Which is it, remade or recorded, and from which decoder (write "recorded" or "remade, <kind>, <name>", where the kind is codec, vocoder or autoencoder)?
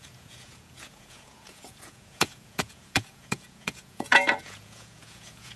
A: remade, vocoder, Vocos